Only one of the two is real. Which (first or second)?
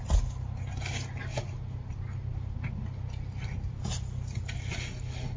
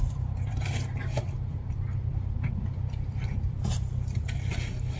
first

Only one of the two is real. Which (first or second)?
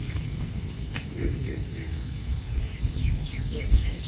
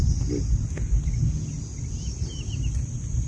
second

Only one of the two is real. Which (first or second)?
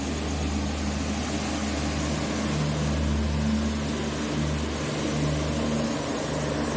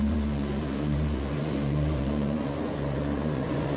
first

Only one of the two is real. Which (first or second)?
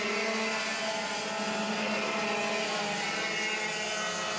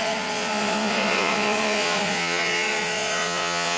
first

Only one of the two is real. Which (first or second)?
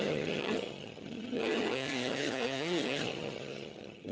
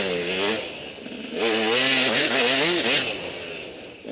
second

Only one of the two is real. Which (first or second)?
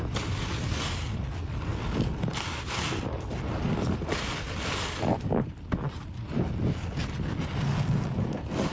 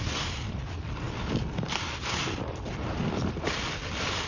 first